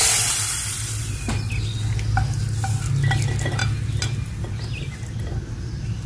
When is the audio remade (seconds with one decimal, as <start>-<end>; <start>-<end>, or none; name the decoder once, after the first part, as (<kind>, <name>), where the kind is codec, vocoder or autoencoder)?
0.0-1.5 (vocoder, BigVGAN v2)